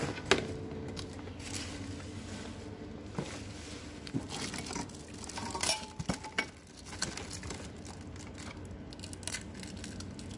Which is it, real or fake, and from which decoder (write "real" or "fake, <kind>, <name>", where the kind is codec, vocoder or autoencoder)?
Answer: real